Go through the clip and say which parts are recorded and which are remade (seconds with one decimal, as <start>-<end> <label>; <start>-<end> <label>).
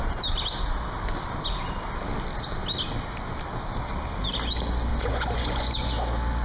0.0-4.9 recorded; 4.9-5.9 remade; 5.9-6.4 recorded